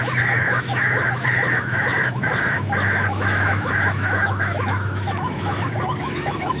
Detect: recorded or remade remade